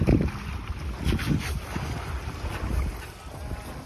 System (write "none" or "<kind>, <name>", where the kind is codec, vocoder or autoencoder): none